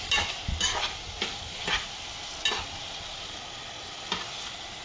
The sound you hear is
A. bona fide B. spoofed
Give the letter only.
A